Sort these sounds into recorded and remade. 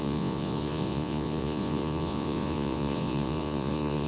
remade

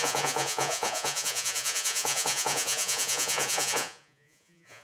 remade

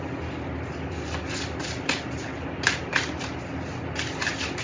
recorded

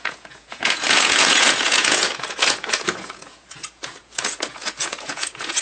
remade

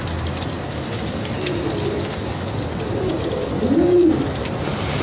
recorded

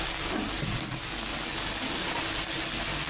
recorded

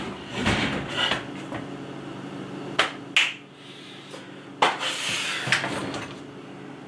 recorded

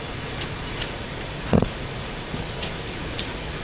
remade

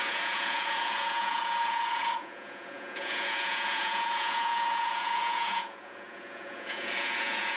remade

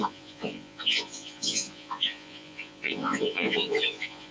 remade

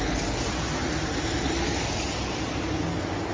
recorded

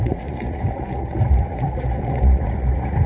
remade